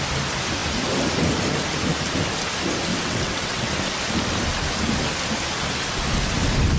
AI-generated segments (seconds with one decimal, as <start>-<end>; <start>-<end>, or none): 2.9-3.7